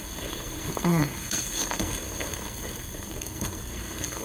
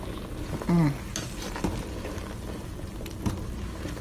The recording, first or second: second